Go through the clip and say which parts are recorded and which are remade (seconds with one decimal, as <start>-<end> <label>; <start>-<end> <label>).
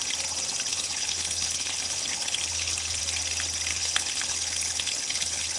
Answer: 0.0-0.7 recorded; 0.7-3.0 remade; 3.0-3.7 recorded; 3.7-5.6 remade